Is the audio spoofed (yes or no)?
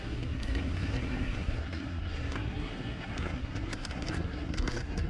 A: yes